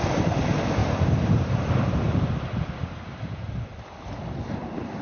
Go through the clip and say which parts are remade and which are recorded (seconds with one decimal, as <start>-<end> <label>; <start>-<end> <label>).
0.0-0.8 recorded; 0.8-1.7 remade; 1.7-5.0 recorded